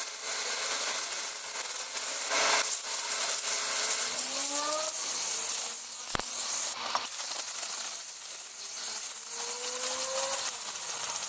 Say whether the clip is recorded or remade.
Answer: recorded